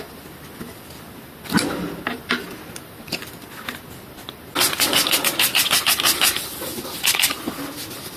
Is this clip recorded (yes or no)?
yes